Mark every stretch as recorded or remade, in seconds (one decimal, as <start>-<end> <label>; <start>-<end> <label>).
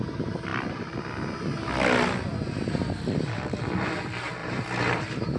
0.0-4.4 recorded; 4.4-5.0 remade; 5.0-5.4 recorded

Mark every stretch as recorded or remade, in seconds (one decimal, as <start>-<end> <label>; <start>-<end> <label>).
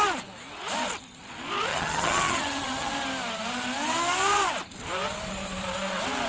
0.0-1.7 recorded; 1.7-2.9 remade; 2.9-6.3 recorded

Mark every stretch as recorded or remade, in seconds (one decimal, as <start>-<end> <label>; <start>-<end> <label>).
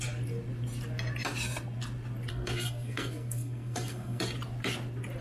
0.0-2.3 recorded; 2.3-4.2 remade; 4.2-5.2 recorded